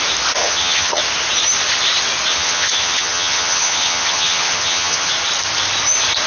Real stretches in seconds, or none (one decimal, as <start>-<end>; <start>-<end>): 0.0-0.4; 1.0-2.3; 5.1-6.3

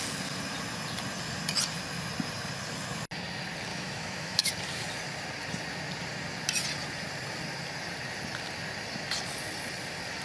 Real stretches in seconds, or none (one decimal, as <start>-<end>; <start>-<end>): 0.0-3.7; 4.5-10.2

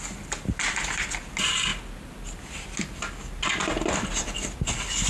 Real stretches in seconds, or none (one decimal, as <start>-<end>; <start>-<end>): 0.0-5.1

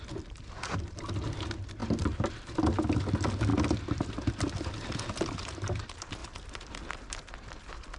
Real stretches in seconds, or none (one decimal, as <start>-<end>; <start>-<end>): 0.0-8.0